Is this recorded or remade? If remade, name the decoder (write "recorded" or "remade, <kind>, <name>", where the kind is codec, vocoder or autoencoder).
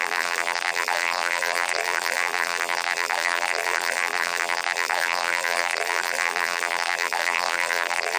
remade, vocoder, BigVGAN v2